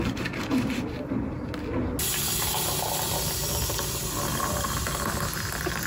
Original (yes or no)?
yes